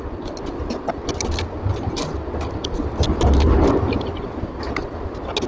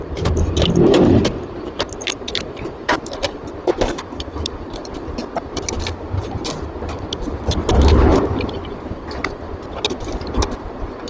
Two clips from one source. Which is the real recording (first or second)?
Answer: first